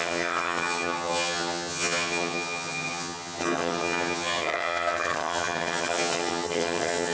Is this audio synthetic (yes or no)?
yes